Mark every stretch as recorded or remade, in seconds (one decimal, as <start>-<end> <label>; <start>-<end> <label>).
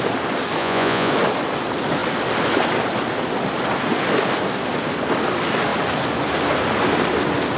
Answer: 0.0-0.6 recorded; 0.6-1.1 remade; 1.1-7.6 recorded